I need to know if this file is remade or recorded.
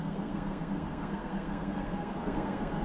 remade